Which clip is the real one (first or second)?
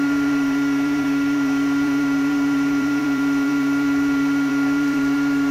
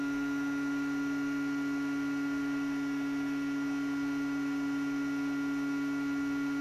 second